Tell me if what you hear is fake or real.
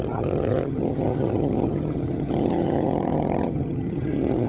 fake